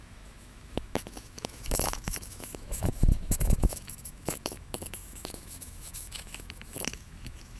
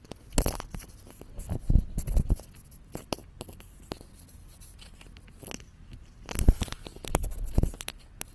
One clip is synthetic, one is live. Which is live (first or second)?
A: second